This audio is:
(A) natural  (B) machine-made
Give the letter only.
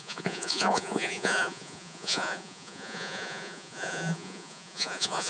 B